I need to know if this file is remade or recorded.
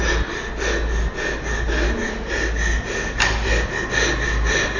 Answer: recorded